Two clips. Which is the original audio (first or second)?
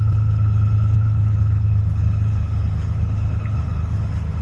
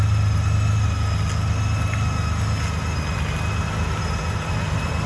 second